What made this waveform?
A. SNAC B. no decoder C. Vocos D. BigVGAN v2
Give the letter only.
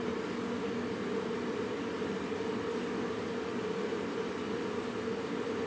B